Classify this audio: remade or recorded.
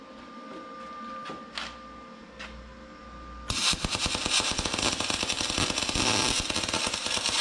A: recorded